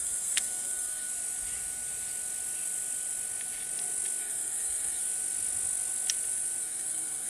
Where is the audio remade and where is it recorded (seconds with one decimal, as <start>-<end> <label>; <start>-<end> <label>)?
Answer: 0.0-1.1 remade; 1.1-4.2 recorded; 4.2-5.0 remade; 5.0-6.6 recorded; 6.6-7.3 remade